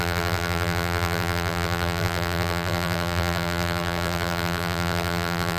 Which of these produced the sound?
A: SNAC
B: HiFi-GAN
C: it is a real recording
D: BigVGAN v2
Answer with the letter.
D